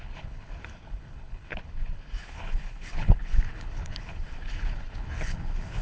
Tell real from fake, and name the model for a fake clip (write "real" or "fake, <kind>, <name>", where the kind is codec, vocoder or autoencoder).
fake, codec, HILCodec